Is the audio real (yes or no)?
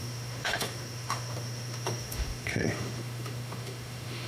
no